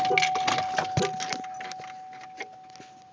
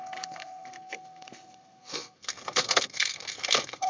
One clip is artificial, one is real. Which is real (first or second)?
first